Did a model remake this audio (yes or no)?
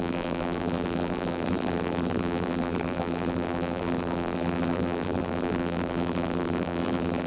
yes